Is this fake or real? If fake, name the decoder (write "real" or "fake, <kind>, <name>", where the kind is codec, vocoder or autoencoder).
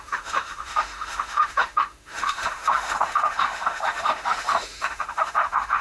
fake, autoencoder, DAC-VAE